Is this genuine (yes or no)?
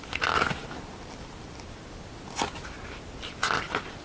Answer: yes